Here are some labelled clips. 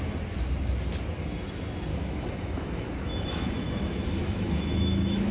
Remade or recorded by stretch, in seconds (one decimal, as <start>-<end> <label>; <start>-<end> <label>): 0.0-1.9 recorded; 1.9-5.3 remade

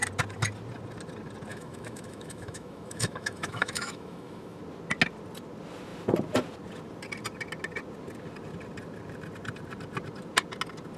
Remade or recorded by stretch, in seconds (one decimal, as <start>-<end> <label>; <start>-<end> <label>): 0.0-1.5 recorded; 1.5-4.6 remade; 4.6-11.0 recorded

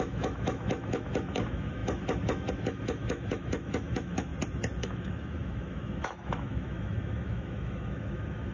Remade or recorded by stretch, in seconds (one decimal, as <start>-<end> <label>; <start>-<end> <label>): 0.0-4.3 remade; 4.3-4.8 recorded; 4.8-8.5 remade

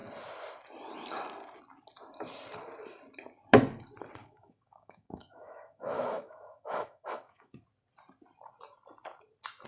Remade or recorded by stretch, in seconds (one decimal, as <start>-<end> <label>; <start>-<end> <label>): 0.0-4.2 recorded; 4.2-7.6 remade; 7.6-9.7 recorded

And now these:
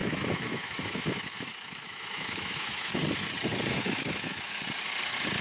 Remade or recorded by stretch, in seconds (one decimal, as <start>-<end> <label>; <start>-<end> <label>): 0.0-3.0 remade; 3.0-3.8 recorded; 3.8-4.6 remade; 4.6-5.4 recorded